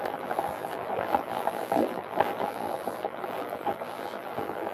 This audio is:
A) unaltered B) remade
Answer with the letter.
B